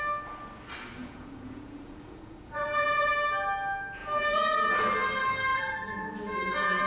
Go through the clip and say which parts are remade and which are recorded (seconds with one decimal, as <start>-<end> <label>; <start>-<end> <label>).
0.0-1.0 recorded; 1.0-3.1 remade; 3.1-4.0 recorded; 4.0-4.7 remade; 4.7-5.5 recorded; 5.5-6.9 remade